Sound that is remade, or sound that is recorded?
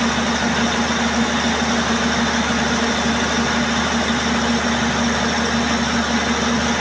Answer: recorded